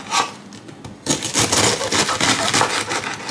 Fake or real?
real